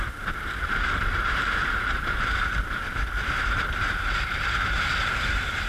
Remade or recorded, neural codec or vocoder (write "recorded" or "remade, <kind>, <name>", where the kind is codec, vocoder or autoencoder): remade, vocoder, BigVGAN v2